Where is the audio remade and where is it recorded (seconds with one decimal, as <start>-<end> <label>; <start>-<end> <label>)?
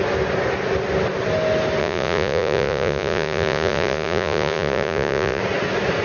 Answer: 0.0-1.8 recorded; 1.8-5.4 remade; 5.4-6.0 recorded